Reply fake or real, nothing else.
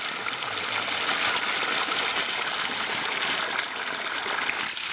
real